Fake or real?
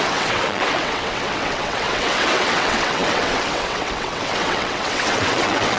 fake